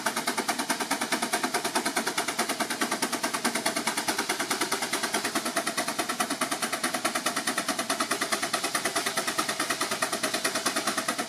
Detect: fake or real real